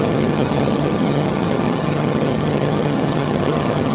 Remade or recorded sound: remade